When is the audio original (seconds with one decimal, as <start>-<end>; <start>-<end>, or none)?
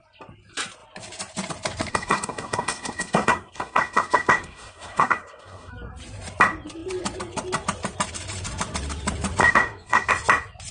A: 0.0-1.9; 5.7-9.4; 10.1-10.7